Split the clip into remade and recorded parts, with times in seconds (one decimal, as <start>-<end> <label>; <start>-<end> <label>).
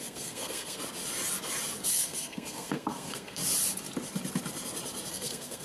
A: 0.0-0.8 remade; 0.8-1.9 recorded; 1.9-3.4 remade; 3.4-5.1 recorded; 5.1-5.6 remade